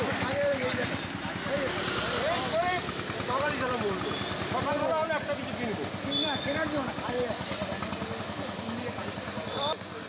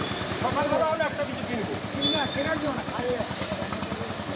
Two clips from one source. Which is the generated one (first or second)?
second